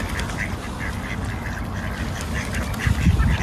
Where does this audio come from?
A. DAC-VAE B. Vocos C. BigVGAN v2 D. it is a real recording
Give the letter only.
D